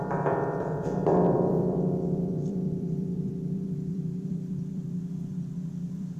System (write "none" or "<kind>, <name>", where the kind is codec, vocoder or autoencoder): vocoder, BigVGAN v2